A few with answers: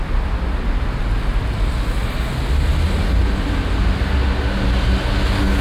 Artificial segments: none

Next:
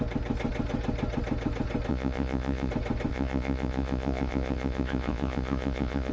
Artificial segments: 1.9-2.7 (vocoder, Vocos); 3.1-6.1

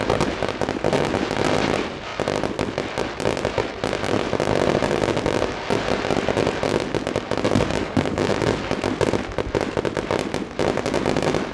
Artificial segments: 7.7-8.3 (codec, DAC)

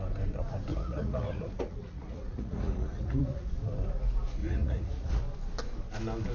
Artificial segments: 0.7-3.6 (vocoder, Vocos); 4.4-5.2

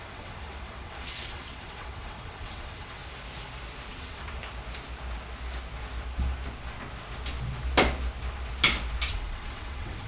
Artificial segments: 0.0-3.0 (vocoder, WaveNeXt); 3.9-4.4; 9.1-10.1

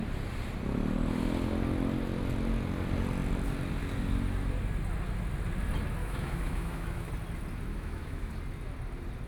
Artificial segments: 6.0-7.1 (autoencoder, DAC-VAE); 7.7-8.3